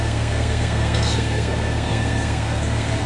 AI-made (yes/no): yes